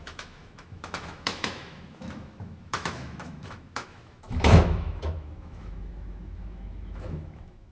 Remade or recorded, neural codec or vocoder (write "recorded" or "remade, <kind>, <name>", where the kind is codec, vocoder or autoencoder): remade, autoencoder, DAC-VAE